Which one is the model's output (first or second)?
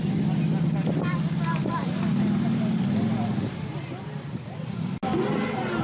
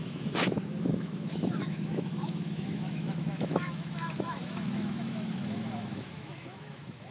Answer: second